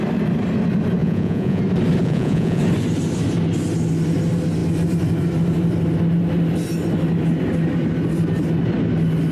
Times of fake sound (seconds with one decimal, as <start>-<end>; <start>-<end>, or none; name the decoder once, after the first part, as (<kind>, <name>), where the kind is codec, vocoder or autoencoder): 1.0-1.6 (vocoder, Vocos); 2.0-2.6